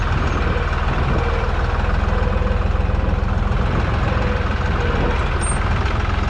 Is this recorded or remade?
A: recorded